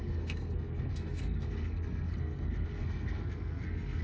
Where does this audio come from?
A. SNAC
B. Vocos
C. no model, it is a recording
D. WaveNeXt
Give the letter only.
A